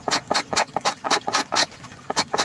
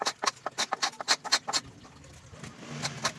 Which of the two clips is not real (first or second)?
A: first